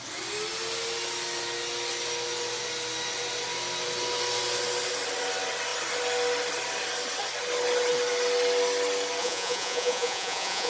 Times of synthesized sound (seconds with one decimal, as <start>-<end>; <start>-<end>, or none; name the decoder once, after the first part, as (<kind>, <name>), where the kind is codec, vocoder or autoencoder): 9.2-10.7 (vocoder, Vocos)